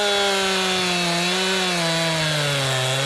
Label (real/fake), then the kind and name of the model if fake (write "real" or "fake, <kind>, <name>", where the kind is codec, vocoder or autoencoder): real